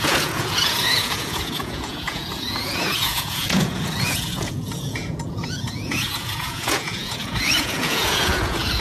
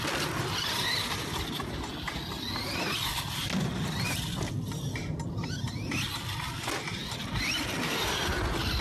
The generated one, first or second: first